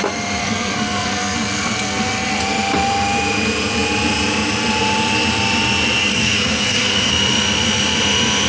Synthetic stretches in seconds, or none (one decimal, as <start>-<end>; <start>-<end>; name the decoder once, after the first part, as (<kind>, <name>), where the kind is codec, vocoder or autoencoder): 0.4-2.4 (codec, SNAC); 6.0-7.1